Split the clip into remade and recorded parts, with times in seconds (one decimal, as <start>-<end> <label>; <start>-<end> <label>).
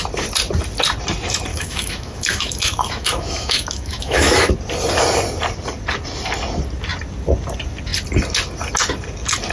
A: 0.0-1.5 recorded; 1.5-4.5 remade; 4.5-9.5 recorded